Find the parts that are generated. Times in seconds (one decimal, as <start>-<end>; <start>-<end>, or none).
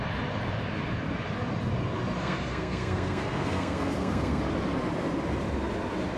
2.2-4.4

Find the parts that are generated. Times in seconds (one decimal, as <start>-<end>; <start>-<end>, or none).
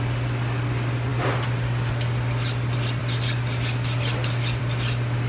none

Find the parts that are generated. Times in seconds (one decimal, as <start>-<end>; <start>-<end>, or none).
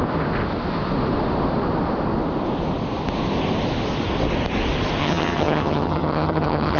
5.0-6.8